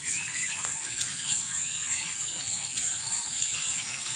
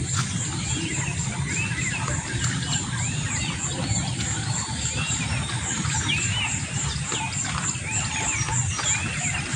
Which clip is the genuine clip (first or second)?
second